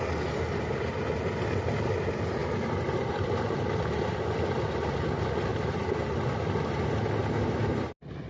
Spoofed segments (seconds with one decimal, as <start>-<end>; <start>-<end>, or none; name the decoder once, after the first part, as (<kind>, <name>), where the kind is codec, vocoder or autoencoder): 2.4-4.6 (vocoder, BigVGAN v2); 5.5-6.2

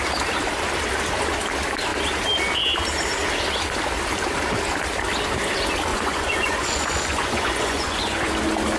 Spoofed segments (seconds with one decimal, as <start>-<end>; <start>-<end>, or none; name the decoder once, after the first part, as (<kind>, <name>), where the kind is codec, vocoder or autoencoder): 5.9-8.3 (vocoder, Vocos)